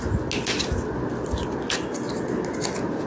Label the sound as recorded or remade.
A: recorded